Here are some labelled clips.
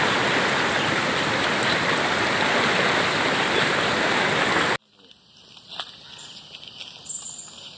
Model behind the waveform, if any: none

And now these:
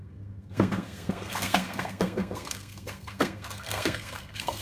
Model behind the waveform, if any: codec, SNAC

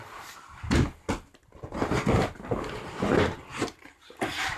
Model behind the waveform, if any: none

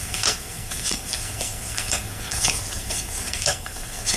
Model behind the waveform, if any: codec, SNAC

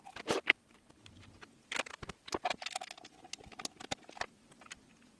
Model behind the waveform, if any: none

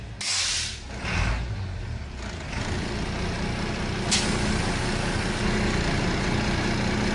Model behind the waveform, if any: none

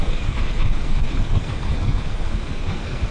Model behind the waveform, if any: codec, SNAC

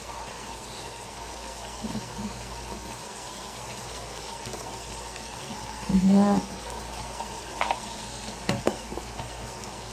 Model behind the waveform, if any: codec, SNAC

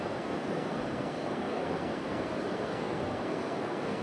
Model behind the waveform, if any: codec, SNAC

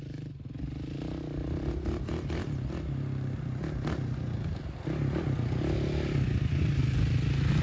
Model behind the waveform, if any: none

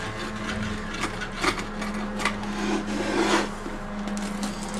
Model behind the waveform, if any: none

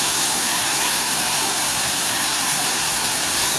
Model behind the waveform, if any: codec, SNAC